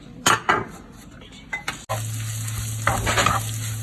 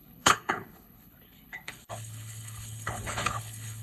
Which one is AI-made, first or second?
second